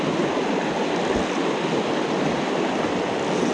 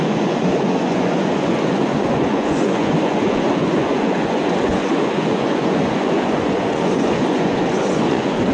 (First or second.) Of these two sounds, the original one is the first